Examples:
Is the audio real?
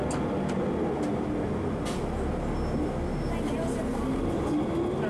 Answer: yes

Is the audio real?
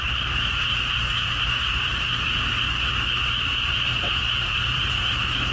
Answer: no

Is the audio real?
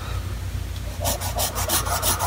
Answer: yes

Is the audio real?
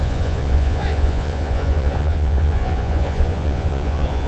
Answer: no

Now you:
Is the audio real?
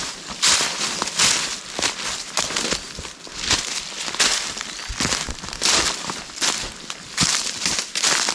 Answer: no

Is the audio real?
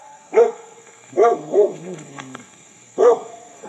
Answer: no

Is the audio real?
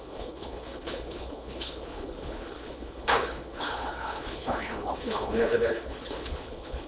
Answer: no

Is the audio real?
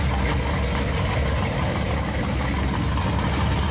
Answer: yes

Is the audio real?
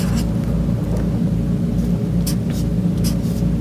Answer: yes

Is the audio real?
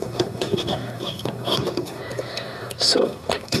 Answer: no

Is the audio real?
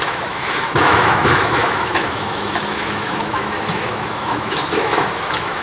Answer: no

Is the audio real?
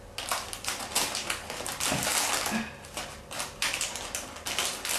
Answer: yes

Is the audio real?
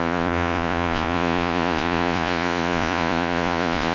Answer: no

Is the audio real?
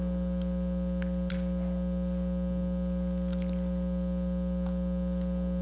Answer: yes